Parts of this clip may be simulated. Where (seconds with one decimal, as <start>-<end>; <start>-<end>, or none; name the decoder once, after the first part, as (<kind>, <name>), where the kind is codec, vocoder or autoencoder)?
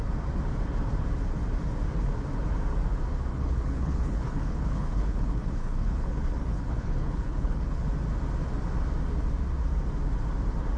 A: 3.3-7.9 (codec, HILCodec)